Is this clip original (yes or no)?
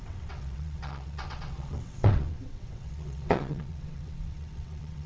no